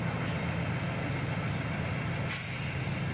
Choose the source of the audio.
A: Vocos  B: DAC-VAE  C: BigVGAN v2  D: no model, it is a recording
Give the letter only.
D